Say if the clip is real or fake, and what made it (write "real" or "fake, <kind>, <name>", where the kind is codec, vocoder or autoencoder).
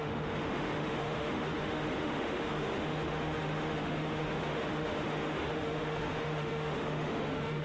fake, autoencoder, DAC-VAE